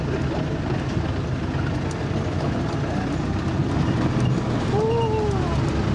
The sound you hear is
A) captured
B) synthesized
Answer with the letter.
A